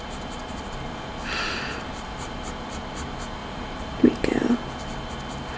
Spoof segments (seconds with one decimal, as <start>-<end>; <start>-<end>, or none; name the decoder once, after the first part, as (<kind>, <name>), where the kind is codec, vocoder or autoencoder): 1.1-2.3 (vocoder, BigVGAN v2); 3.4-4.5